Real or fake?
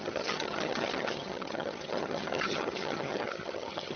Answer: fake